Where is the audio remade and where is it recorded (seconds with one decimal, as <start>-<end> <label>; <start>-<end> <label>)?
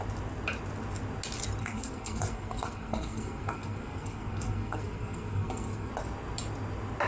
0.0-1.6 recorded; 1.6-5.9 remade; 5.9-7.1 recorded